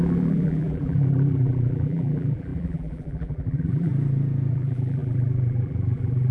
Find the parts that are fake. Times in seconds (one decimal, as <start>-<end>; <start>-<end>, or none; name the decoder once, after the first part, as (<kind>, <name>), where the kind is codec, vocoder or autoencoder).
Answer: 0.0-3.9 (vocoder, BigVGAN v2); 4.5-6.3